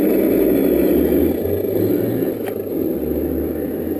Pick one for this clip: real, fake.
real